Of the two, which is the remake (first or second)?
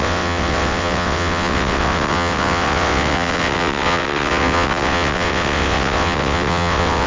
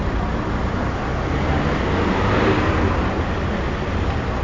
first